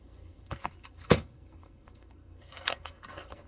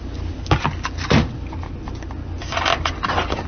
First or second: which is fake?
first